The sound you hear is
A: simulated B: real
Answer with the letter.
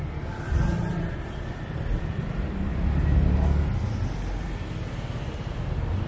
B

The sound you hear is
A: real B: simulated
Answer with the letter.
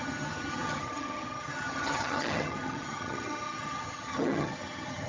B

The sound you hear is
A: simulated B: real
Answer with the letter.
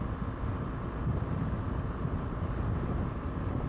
B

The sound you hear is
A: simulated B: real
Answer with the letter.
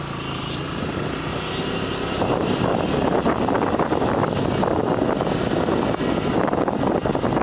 B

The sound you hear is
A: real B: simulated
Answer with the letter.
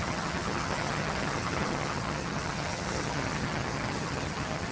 B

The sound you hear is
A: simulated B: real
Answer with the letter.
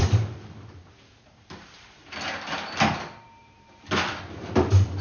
B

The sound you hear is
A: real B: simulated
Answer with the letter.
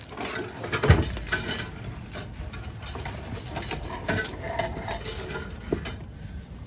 A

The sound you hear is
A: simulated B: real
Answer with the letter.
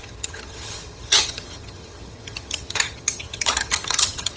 A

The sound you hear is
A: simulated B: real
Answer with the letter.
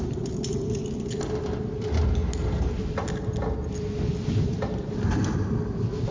B